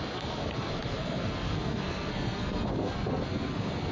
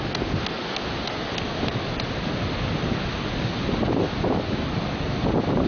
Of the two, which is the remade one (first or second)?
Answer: first